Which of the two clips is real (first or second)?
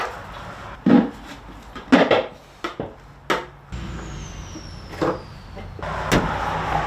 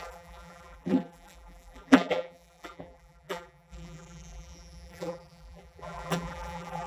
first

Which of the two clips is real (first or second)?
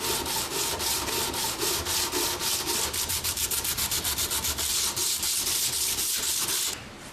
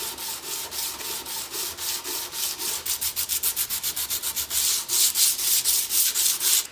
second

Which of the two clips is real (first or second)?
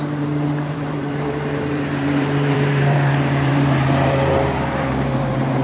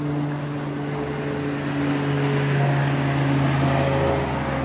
second